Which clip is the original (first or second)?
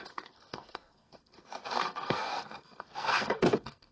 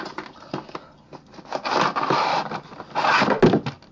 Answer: second